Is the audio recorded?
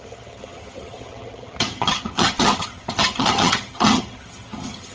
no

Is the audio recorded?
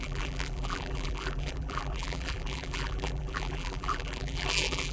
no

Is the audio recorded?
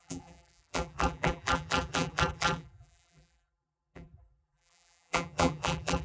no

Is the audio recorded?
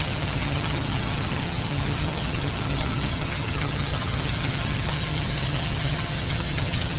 no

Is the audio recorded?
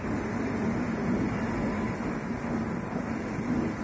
yes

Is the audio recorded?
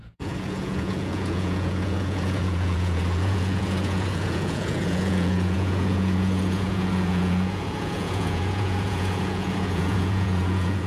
no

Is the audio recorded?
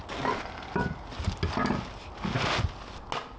yes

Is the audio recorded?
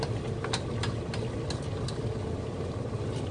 yes